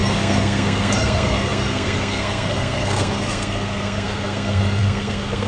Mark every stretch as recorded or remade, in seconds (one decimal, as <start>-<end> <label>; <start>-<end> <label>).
0.0-5.5 remade